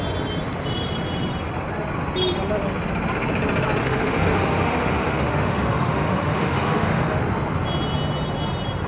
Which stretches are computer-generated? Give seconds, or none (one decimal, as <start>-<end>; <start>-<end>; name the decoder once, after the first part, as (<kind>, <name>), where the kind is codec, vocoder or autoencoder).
3.8-7.2 (autoencoder, DAC-VAE)